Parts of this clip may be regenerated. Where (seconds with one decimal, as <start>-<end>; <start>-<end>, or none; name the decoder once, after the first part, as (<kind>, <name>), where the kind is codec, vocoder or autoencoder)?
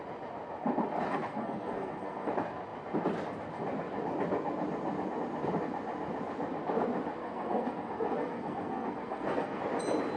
1.1-2.3 (codec, SNAC); 7.2-9.6